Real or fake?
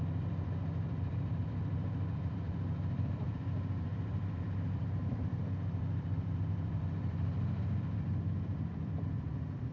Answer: fake